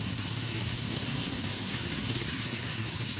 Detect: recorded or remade remade